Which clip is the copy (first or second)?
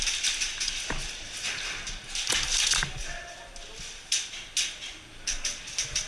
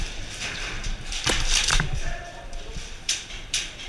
second